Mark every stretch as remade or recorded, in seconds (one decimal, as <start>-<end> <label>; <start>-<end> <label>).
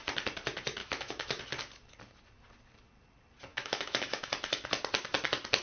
0.0-0.8 recorded; 0.8-1.4 remade; 1.4-3.5 recorded; 3.5-4.3 remade; 4.3-5.6 recorded